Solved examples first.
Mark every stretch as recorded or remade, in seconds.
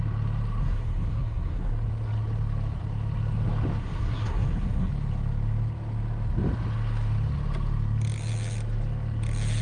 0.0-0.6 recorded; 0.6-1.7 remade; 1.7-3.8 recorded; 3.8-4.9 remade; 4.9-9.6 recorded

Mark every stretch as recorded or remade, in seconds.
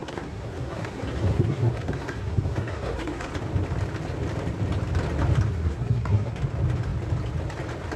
0.0-3.3 remade; 3.3-5.5 recorded; 5.5-6.4 remade; 6.4-8.0 recorded